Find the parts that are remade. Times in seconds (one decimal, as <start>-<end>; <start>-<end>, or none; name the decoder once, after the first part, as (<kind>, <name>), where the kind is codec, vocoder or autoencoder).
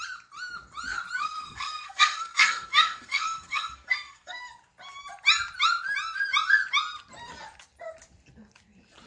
1.2-4.4 (codec, SNAC)